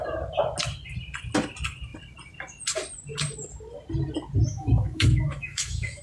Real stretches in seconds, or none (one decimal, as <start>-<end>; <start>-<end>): 0.0-4.5